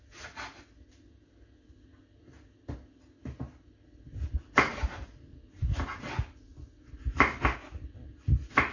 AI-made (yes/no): no